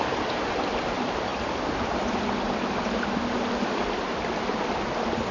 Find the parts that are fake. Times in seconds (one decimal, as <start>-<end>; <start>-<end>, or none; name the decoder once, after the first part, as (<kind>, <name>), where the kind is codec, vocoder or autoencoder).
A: none